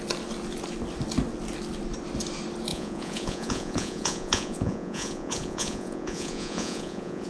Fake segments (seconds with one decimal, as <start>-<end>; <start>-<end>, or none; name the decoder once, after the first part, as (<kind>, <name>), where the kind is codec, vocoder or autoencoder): 2.7-7.3 (vocoder, Vocos)